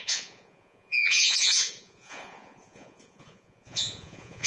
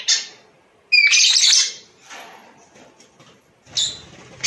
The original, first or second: second